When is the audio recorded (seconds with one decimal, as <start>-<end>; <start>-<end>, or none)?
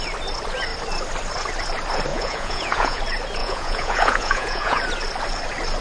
0.0-2.1; 3.0-3.4; 4.8-5.8